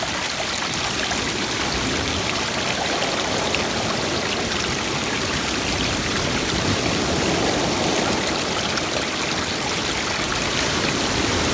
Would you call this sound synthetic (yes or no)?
no